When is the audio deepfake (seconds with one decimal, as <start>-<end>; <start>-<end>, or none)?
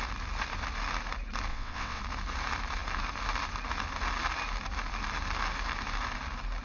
1.5-2.0